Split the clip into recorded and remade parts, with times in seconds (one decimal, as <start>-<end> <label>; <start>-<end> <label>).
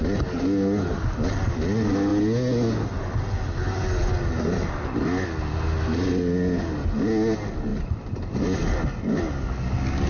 0.0-10.1 recorded